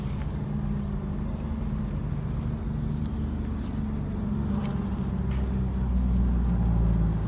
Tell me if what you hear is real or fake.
real